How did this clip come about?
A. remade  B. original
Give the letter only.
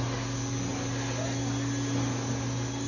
B